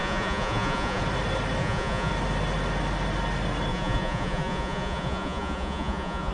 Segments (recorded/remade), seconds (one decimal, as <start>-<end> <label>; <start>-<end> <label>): 0.0-1.0 remade; 1.0-1.6 recorded; 1.6-2.1 remade; 2.1-3.7 recorded; 3.7-6.3 remade